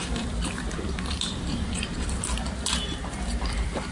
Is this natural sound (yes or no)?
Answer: no